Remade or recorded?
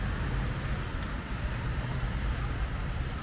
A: remade